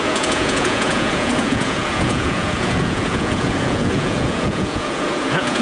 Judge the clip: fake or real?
fake